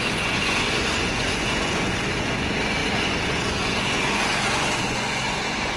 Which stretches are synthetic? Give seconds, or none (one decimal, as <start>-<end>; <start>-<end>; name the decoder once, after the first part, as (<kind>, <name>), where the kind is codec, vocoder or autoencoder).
0.0-5.8 (vocoder, Vocos)